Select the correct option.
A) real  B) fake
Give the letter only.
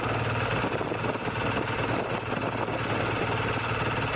A